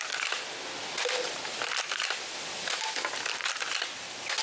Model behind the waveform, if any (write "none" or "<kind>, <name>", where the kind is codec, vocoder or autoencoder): none